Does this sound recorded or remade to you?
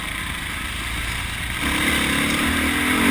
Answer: recorded